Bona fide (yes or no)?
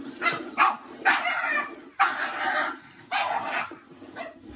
no